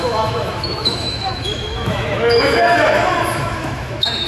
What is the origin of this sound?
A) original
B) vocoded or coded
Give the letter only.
B